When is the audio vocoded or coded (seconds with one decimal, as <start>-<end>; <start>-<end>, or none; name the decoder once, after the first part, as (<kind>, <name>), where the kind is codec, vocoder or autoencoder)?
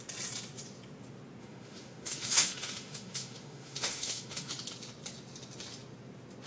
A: 1.4-4.5 (autoencoder, DAC-VAE)